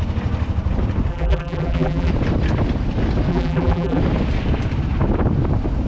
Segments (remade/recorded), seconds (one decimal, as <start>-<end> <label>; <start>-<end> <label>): 0.0-1.1 recorded; 1.1-2.1 remade; 2.1-3.3 recorded; 3.3-4.0 remade; 4.0-5.9 recorded